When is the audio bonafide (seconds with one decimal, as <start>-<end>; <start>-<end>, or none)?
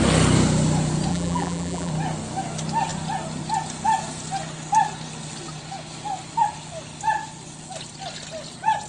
0.0-1.1; 1.9-8.9